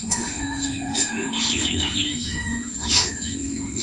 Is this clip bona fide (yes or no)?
no